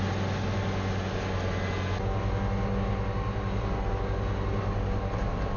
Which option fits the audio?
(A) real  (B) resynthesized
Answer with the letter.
A